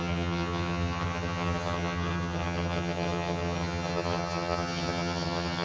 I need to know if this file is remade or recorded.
remade